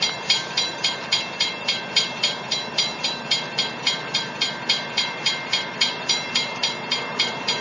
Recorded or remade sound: remade